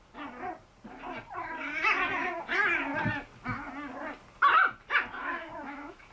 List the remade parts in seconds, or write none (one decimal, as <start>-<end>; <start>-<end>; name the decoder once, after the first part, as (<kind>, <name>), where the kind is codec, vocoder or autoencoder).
5.2-6.1 (autoencoder, DAC-VAE)